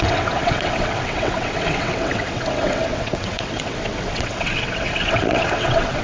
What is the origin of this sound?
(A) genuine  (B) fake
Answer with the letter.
B